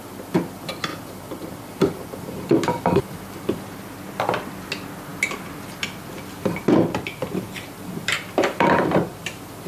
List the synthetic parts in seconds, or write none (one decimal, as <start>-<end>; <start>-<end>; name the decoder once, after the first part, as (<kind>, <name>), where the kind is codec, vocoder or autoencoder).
0.9-3.8 (vocoder, BigVGAN v2); 7.2-9.7